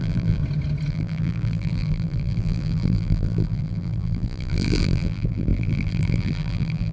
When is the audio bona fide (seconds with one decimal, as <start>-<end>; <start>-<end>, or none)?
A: 0.4-0.9